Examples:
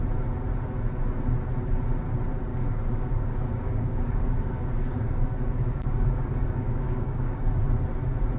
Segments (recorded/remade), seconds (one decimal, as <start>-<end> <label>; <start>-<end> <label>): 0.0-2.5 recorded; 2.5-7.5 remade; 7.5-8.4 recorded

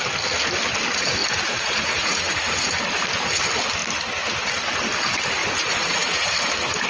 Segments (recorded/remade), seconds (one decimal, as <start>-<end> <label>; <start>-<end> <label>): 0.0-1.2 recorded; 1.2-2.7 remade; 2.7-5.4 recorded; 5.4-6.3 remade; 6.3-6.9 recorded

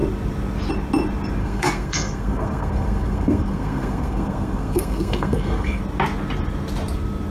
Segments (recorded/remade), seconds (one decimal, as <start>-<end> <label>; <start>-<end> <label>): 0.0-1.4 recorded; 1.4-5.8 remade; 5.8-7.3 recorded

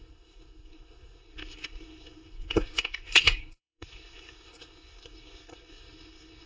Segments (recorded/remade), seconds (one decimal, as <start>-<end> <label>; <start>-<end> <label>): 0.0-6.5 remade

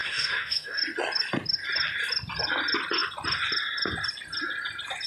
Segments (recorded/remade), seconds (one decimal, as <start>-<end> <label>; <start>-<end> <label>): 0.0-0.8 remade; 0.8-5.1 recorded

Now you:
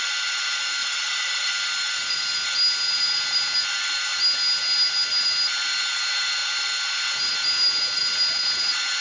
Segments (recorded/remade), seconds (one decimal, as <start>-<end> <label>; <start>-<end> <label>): 0.0-0.8 recorded; 0.8-1.5 remade; 1.5-9.0 recorded

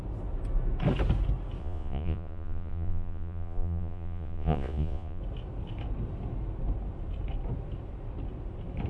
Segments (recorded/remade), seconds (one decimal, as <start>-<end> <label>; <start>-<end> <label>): 0.0-1.6 recorded; 1.6-5.2 remade; 5.2-8.9 recorded